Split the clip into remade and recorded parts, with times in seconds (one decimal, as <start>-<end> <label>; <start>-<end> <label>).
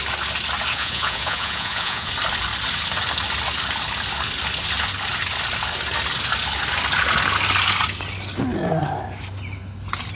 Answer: 0.0-0.7 recorded; 0.7-2.1 remade; 2.1-10.2 recorded